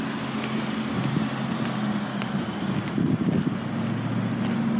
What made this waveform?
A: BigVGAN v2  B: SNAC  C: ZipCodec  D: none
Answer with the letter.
D